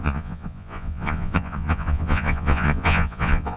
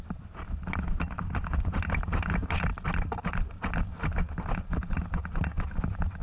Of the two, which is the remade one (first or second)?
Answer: first